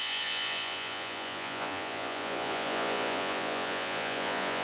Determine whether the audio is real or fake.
fake